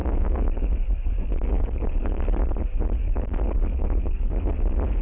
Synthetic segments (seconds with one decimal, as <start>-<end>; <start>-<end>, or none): 0.0-2.2; 3.0-4.5